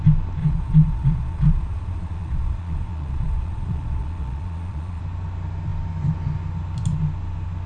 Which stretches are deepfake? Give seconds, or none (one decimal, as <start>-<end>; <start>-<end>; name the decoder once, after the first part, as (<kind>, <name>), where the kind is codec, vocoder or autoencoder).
0.4-5.0 (vocoder, Vocos)